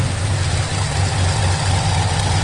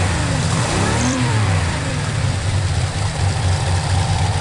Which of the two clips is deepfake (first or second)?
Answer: second